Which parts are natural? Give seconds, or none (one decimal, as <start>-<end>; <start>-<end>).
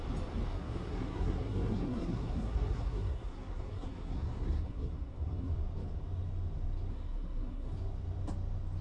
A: 0.0-0.5; 5.5-6.9; 7.7-8.8